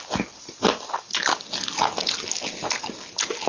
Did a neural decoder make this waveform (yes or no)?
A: no